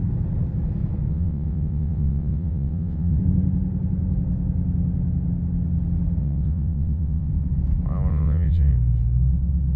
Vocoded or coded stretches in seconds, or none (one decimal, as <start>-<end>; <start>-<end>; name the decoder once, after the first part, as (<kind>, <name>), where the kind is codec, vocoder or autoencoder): 1.1-3.2 (vocoder, WaveNeXt); 6.2-7.3; 8.1-8.7